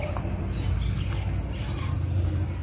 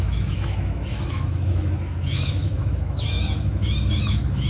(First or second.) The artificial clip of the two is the second